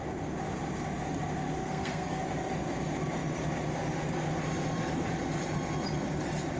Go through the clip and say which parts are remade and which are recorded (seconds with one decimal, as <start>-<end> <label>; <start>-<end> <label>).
0.0-1.6 recorded; 1.6-2.2 remade; 2.2-6.6 recorded